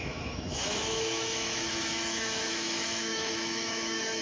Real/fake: fake